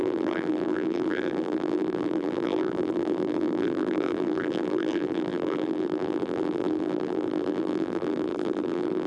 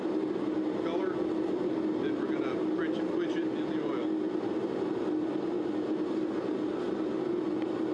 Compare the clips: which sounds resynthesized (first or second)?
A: first